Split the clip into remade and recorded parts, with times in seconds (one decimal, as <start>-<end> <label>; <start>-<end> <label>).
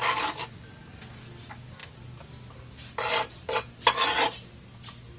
0.0-0.8 remade; 0.8-5.2 recorded